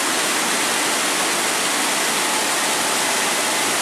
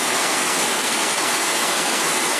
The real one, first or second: first